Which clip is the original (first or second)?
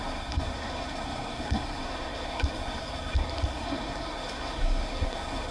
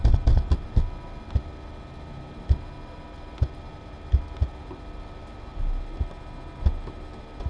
second